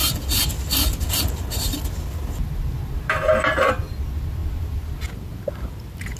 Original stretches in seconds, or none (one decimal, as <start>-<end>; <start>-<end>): 0.0-6.2